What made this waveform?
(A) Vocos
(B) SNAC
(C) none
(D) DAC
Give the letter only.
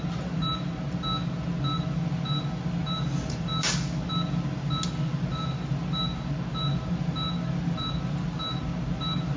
C